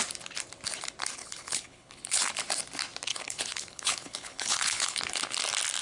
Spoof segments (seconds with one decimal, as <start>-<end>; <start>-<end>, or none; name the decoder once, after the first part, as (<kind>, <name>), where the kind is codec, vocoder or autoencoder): 1.2-2.3 (codec, HILCodec); 3.1-5.0